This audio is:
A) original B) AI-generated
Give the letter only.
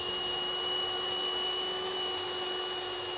B